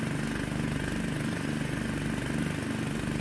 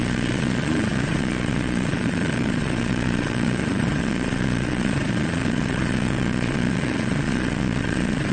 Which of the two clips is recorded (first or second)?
first